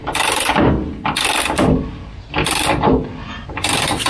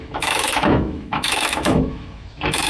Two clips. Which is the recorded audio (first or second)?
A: first